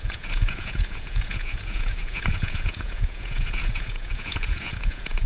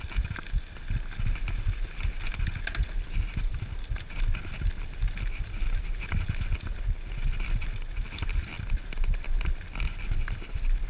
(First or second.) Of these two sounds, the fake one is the first